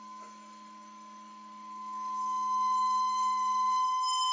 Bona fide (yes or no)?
no